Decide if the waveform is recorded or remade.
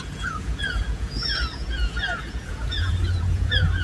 remade